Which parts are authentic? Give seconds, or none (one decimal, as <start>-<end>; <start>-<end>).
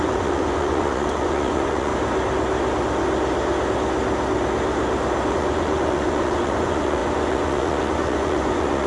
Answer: 1.9-5.3